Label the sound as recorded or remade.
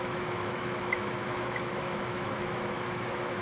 remade